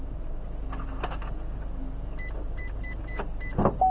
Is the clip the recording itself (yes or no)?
yes